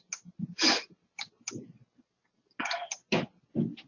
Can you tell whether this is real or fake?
real